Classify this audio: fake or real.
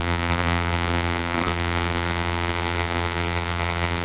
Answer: fake